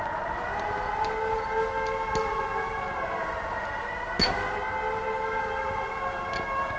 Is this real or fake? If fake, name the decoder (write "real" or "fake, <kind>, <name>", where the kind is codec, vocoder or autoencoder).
real